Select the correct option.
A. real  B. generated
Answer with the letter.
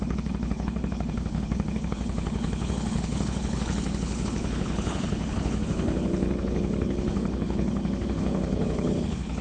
B